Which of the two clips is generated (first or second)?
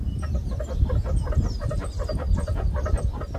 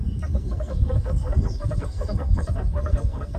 second